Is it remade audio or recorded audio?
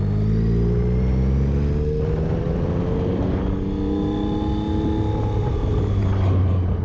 recorded